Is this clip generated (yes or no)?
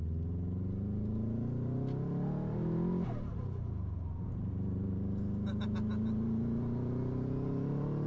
no